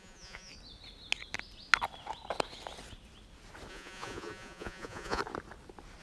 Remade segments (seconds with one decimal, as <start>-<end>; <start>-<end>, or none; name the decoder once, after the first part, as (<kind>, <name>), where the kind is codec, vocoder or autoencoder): 0.0-0.5 (vocoder, Vocos); 3.7-5.2